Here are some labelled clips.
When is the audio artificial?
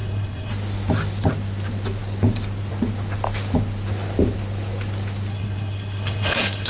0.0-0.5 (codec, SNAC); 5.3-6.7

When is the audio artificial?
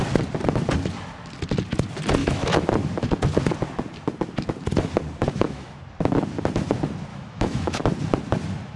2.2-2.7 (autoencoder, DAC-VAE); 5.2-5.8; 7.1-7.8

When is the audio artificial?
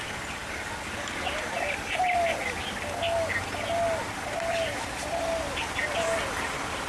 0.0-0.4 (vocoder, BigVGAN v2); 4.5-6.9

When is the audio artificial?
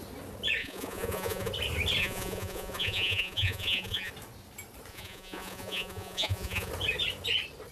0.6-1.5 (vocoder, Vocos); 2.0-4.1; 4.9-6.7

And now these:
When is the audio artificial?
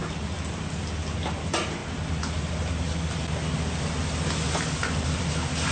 none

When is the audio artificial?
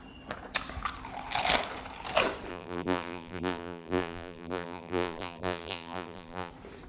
2.5-6.5 (vocoder, BigVGAN v2)